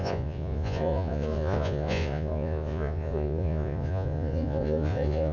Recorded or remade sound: remade